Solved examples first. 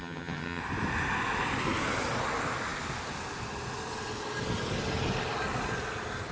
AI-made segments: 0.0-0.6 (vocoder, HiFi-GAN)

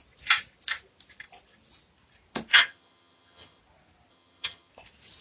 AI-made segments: 2.5-3.6 (vocoder, HiFi-GAN); 4.1-4.7

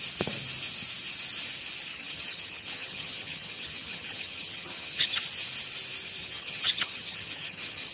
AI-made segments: 1.9-5.2 (vocoder, HiFi-GAN); 6.2-7.9

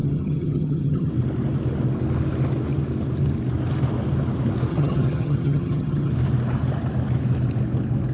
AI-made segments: 0.0-1.1 (vocoder, HiFi-GAN); 4.7-6.1

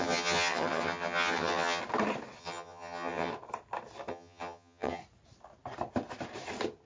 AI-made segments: 0.0-1.8 (vocoder, HiFi-GAN); 2.4-3.3; 4.1-5.0